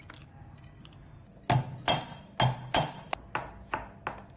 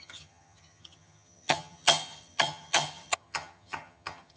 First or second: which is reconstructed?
second